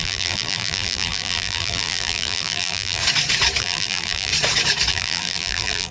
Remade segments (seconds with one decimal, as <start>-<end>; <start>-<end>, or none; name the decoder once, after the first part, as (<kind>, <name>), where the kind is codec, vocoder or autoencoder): 0.0-3.0 (vocoder, BigVGAN v2); 3.6-4.3; 4.9-5.9